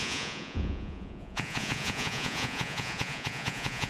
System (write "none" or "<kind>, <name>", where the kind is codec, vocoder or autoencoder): vocoder, Vocos